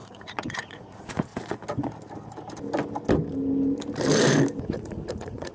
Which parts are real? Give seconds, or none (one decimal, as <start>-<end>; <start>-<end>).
1.3-4.6